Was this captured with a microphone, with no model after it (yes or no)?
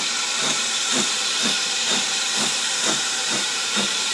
no